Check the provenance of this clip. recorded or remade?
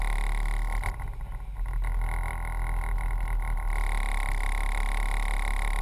recorded